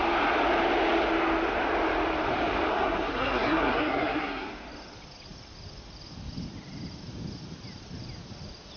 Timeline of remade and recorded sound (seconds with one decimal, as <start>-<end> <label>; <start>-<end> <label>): 0.0-2.7 recorded; 2.7-4.5 remade; 4.5-8.8 recorded